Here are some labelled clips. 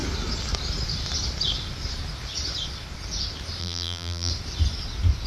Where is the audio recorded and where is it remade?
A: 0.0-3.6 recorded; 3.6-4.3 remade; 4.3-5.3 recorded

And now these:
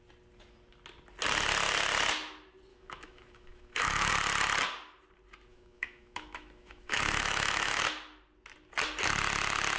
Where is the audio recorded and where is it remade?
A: 0.0-2.7 recorded; 2.7-4.1 remade; 4.1-5.5 recorded; 5.5-7.8 remade; 7.8-9.8 recorded

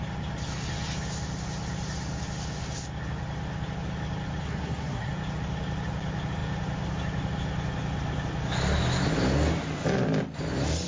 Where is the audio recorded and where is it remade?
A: 0.0-4.4 recorded; 4.4-5.1 remade; 5.1-10.9 recorded

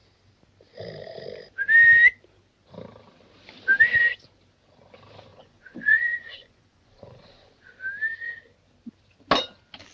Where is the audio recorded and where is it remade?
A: 0.0-5.3 recorded; 5.3-7.7 remade; 7.7-9.9 recorded

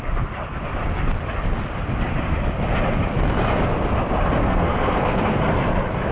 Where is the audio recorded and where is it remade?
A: 0.0-4.4 recorded; 4.4-5.4 remade; 5.4-6.1 recorded

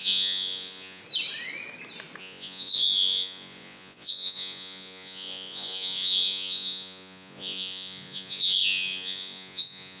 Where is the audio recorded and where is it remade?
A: 0.0-1.0 remade; 1.0-2.2 recorded; 2.2-10.0 remade